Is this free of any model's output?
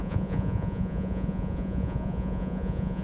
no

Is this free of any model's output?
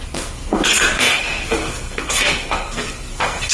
no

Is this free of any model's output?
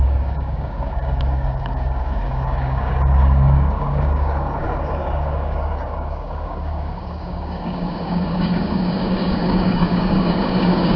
no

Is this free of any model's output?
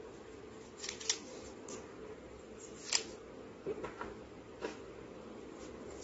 yes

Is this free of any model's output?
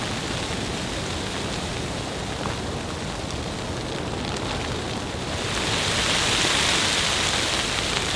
yes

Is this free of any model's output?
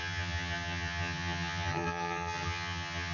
no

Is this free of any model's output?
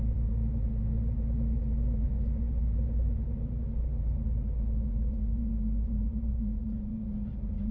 no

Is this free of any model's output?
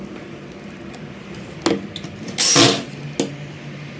yes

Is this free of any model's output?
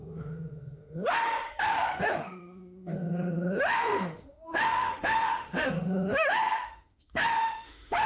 no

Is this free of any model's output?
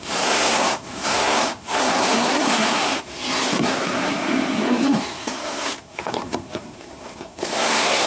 no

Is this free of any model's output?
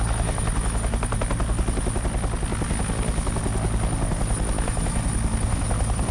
yes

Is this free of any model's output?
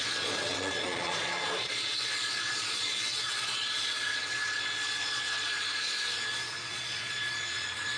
no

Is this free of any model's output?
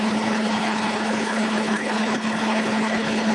no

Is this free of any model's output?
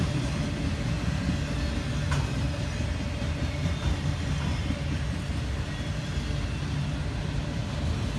yes